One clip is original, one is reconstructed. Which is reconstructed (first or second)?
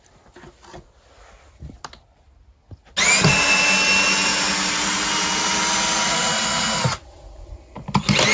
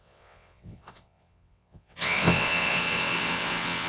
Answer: second